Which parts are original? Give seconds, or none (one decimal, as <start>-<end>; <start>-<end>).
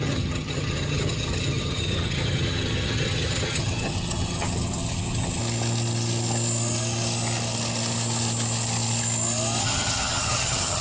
5.4-9.6